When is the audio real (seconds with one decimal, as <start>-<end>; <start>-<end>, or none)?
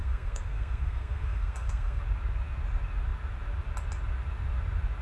2.0-5.0